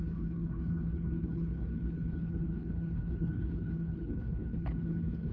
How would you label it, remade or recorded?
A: remade